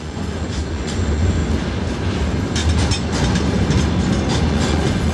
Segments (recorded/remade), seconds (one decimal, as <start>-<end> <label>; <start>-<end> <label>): 0.0-1.4 remade; 1.4-4.5 recorded; 4.5-5.1 remade